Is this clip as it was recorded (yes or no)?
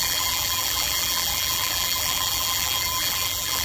no